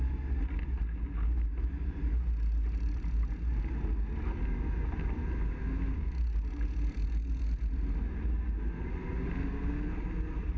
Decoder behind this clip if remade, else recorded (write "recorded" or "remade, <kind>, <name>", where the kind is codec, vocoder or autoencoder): recorded